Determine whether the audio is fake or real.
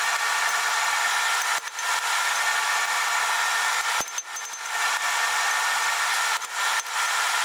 real